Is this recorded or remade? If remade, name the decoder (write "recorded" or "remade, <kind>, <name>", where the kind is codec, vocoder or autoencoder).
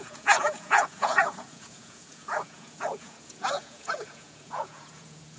remade, vocoder, Vocos